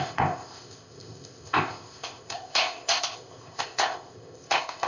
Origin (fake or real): fake